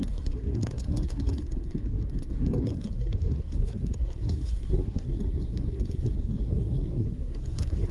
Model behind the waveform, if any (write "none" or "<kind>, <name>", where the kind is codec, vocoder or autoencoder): codec, SNAC